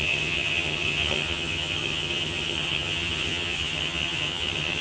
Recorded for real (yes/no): no